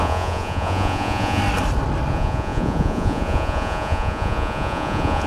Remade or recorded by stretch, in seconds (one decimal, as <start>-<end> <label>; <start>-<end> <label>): 0.0-1.4 remade; 1.4-2.1 recorded; 2.1-5.3 remade